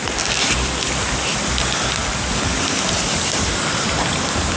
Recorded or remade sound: recorded